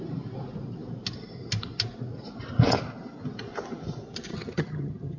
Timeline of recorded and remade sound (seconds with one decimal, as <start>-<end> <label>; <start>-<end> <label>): 0.0-4.3 recorded; 4.3-5.2 remade